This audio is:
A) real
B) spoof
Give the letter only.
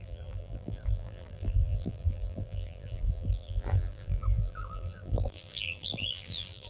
B